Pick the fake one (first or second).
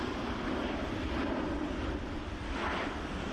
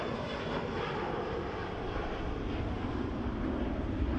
first